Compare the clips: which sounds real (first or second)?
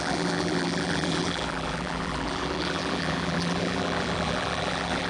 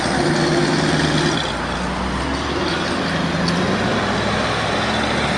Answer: second